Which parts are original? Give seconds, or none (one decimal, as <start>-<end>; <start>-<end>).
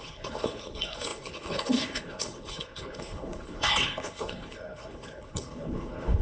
none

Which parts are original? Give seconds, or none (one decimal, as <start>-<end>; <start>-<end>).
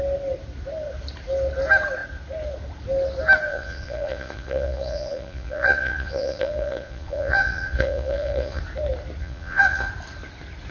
0.0-3.5; 8.6-9.2; 9.9-10.7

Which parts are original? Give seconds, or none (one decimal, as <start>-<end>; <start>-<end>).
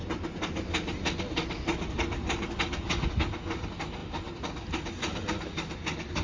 0.0-6.2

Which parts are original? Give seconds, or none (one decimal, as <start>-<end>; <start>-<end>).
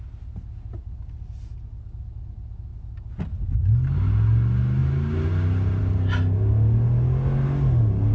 0.0-8.1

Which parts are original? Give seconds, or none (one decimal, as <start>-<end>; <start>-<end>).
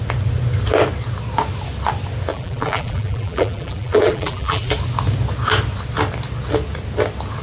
0.0-2.3; 4.7-7.4